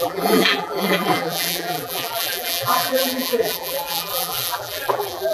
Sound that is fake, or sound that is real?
fake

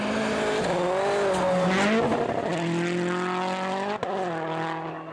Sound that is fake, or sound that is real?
real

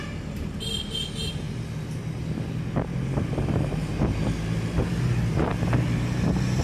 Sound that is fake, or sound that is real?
real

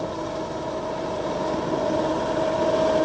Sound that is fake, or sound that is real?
real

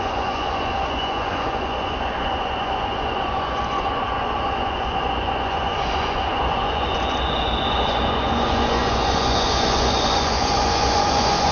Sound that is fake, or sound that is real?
fake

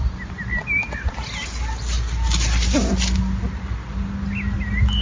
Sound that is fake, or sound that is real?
real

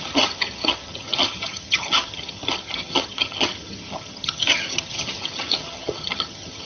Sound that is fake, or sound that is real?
fake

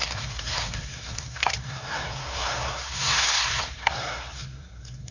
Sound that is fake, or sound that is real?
fake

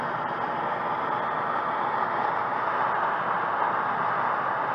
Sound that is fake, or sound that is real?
real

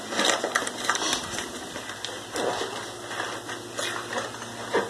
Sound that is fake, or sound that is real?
real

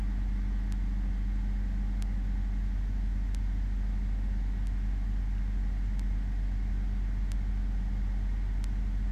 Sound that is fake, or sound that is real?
real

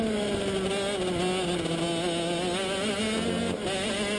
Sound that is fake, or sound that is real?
real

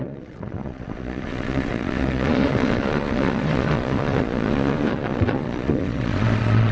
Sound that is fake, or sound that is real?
fake